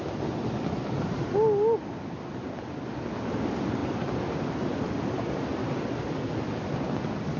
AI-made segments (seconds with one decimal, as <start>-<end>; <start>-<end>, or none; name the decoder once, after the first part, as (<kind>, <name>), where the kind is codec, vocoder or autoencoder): none